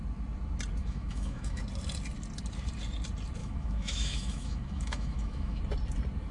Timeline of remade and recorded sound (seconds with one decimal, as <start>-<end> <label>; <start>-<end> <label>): 0.0-0.8 recorded; 0.8-1.6 remade; 1.6-3.4 recorded; 3.4-5.6 remade; 5.6-6.3 recorded